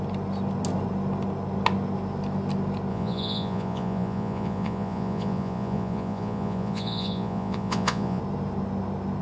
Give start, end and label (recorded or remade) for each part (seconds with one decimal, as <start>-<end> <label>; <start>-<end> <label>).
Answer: 0.0-2.9 recorded; 2.9-8.2 remade; 8.2-9.2 recorded